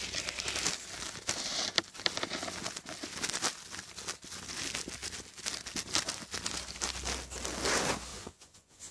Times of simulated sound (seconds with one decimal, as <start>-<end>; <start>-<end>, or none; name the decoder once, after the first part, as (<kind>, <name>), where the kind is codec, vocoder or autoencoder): 8.1-8.9 (vocoder, Vocos)